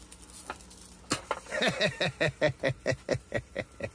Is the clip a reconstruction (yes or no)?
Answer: no